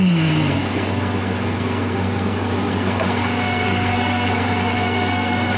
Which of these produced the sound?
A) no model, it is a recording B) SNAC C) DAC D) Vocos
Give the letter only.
B